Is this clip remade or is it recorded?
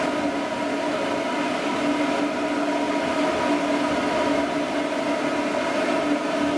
recorded